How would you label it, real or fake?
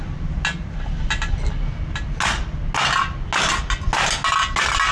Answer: real